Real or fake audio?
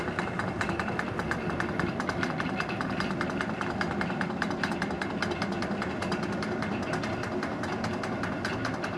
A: real